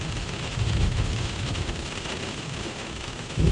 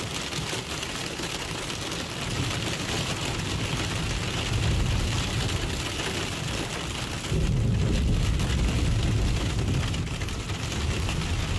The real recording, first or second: second